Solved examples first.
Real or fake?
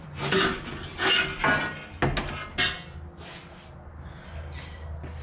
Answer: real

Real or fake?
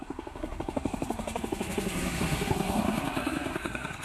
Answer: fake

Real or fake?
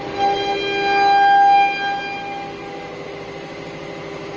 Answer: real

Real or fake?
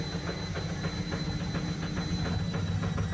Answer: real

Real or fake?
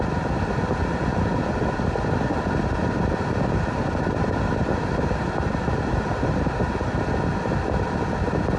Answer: real